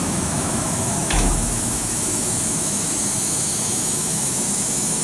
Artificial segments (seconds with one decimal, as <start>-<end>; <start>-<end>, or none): 0.0-5.0